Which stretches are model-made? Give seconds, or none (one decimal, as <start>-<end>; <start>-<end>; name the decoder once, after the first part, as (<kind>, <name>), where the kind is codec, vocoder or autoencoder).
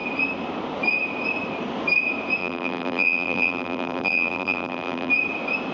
2.4-5.1 (vocoder, BigVGAN v2)